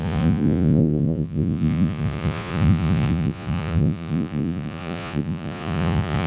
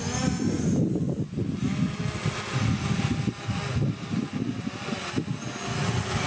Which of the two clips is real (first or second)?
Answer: second